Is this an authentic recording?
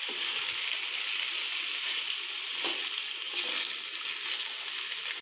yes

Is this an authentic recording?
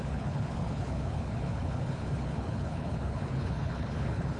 no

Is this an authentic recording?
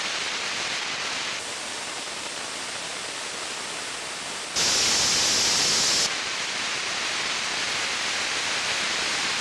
yes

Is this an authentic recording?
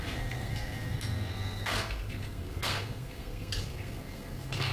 no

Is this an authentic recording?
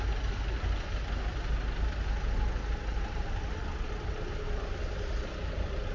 yes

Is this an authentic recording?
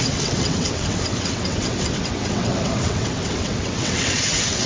no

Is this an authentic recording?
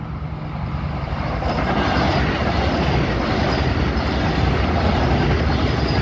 yes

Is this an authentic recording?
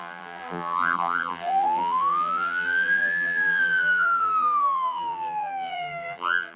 no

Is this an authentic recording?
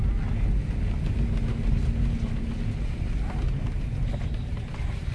yes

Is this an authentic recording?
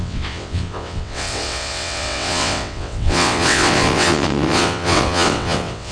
no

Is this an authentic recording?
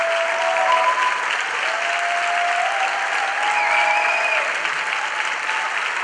yes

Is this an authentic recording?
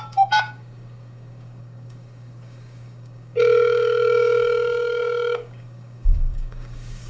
no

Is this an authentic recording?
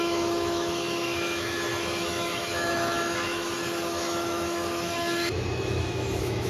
no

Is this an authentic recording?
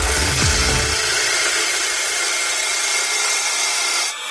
yes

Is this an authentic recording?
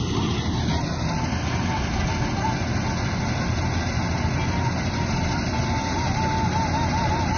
yes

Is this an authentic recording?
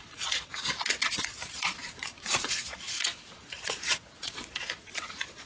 no